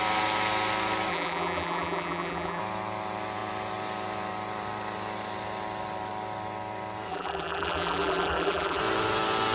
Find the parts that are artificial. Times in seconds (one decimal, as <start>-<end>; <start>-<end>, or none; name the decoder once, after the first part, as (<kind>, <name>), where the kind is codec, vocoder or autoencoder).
1.1-2.6 (vocoder, BigVGAN v2); 7.1-8.8